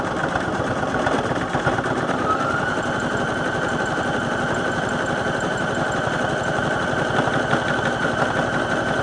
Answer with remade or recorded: remade